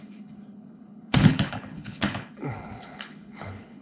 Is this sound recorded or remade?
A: remade